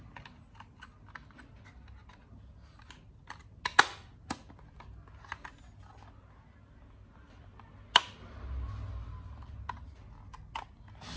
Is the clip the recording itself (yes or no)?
yes